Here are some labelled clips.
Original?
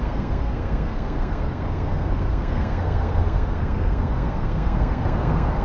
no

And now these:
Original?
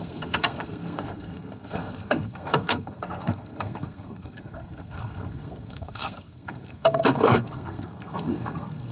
no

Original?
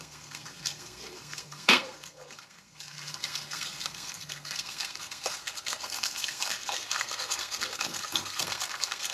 no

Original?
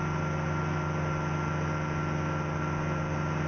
yes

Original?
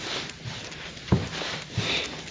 yes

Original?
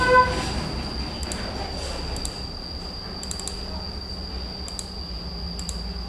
yes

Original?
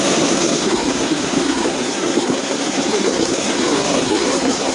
no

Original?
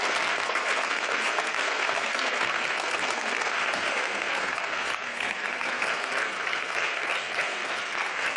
no